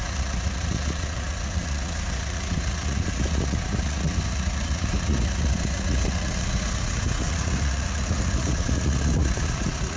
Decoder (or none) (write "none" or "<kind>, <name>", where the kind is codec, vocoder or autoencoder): vocoder, Vocos